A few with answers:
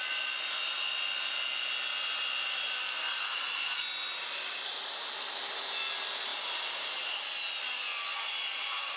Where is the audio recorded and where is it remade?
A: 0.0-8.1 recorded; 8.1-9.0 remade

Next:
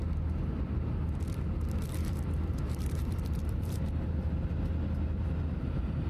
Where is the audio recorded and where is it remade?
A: 0.0-2.0 recorded; 2.0-4.5 remade; 4.5-6.1 recorded